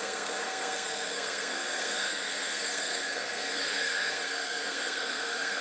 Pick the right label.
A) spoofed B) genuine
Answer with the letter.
A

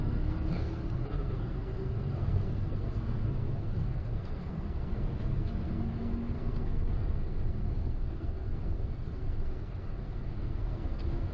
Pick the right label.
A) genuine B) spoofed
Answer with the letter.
B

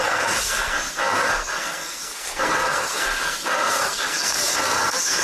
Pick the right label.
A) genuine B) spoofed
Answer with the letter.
B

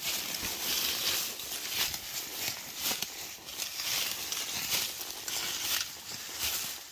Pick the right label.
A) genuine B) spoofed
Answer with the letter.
A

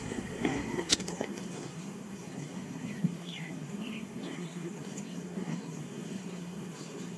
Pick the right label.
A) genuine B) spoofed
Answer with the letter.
B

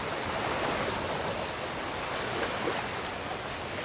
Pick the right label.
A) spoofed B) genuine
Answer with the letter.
B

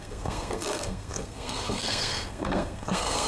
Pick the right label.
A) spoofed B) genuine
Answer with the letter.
A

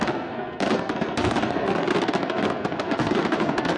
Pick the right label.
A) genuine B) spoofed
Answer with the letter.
B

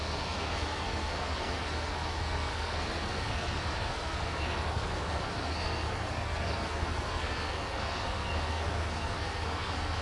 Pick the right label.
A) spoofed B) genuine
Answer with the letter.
A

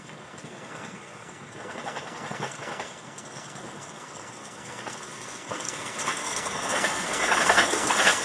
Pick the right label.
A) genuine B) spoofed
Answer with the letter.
B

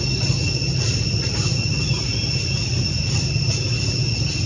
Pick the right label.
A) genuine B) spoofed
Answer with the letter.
A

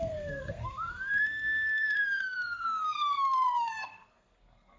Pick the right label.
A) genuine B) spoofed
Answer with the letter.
B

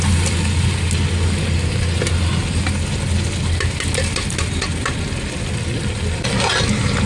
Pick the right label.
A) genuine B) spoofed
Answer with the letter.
A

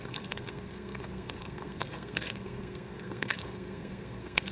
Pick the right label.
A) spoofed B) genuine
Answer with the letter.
A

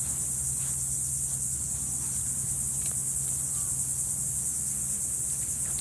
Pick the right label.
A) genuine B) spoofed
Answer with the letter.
A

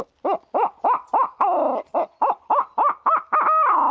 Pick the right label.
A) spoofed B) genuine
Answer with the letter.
B